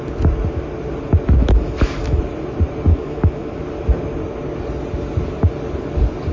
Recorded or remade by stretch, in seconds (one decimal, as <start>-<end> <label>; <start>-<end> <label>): 0.0-1.4 recorded; 1.4-2.2 remade; 2.2-2.9 recorded; 2.9-3.6 remade; 3.6-6.3 recorded